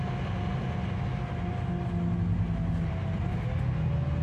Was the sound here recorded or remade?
recorded